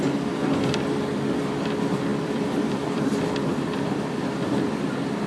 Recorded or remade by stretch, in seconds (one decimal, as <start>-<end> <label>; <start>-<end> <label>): 0.0-2.1 recorded; 2.1-5.3 remade